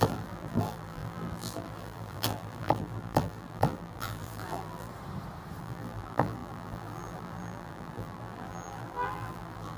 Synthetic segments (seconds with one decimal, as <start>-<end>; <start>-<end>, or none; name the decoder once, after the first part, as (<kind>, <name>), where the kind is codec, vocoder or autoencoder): 0.0-4.9 (vocoder, BigVGAN v2); 5.6-9.8